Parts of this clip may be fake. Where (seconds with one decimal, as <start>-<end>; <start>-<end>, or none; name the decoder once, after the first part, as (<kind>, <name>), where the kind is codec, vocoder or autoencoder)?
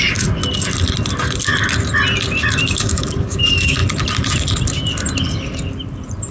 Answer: 0.0-0.4 (codec, DAC); 2.6-3.8